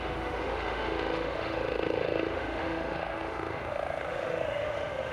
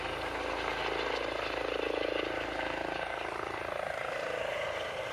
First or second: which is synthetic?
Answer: first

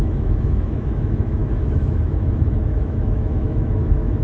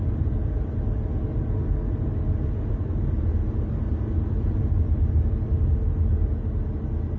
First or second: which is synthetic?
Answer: first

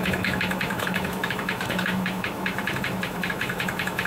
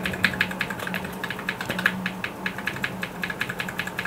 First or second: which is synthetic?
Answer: first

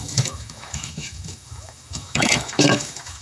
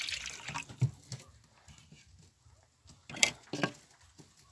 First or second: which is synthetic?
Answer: first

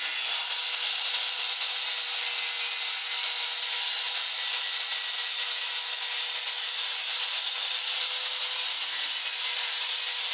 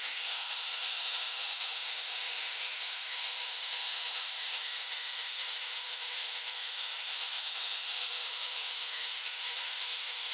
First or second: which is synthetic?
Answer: second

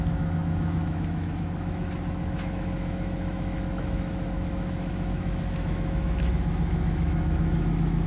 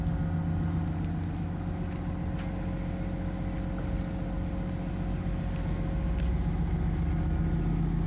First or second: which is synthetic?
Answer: first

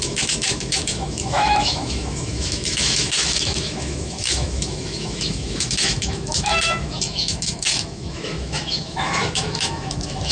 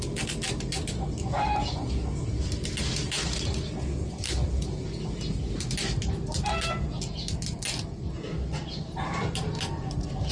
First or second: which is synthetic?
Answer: first